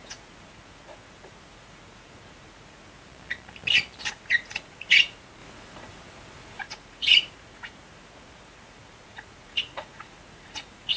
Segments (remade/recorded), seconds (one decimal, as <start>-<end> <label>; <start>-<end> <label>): 0.0-3.1 remade; 3.1-4.1 recorded; 4.1-11.0 remade